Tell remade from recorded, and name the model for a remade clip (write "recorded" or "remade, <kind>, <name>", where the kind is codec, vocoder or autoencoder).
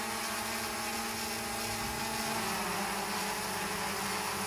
recorded